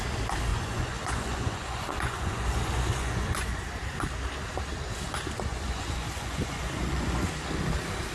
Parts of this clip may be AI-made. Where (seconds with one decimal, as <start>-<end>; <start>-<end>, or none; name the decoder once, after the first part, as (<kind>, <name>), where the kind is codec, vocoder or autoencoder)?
0.5-3.6 (vocoder, Vocos); 5.5-7.3